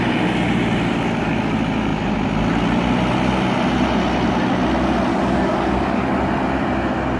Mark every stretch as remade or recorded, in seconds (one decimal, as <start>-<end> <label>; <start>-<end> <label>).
0.0-5.1 recorded; 5.1-6.2 remade; 6.2-7.2 recorded